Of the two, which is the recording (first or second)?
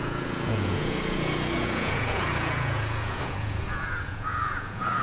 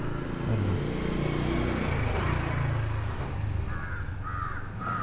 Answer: second